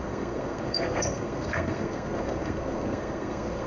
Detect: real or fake fake